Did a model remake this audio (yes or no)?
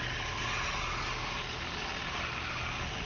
no